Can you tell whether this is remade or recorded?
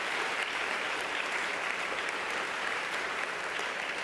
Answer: remade